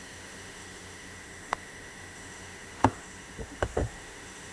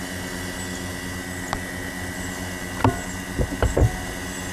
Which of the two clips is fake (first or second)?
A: first